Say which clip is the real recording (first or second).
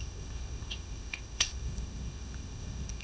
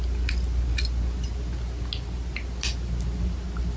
second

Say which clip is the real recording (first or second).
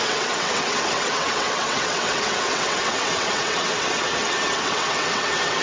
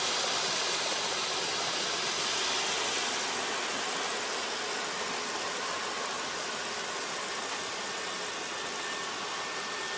second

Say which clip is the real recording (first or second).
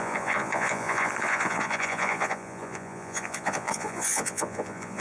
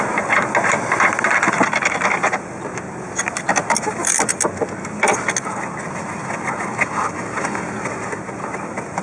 second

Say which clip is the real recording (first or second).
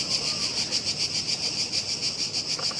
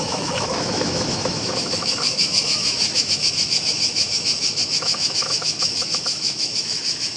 first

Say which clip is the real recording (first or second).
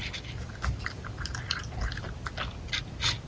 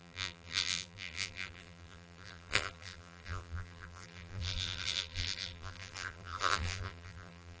first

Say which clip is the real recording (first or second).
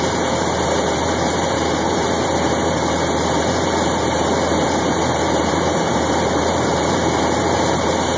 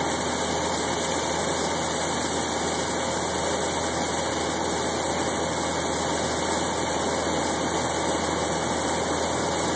second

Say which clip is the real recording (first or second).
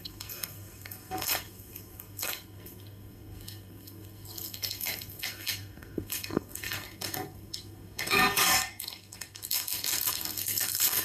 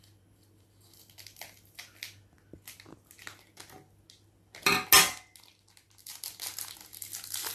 second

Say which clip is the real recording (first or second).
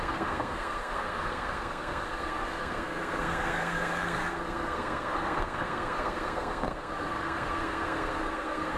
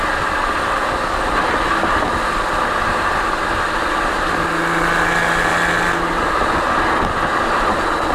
second